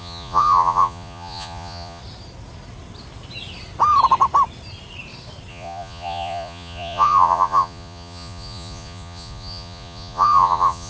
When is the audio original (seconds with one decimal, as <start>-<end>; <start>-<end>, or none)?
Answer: 2.0-5.5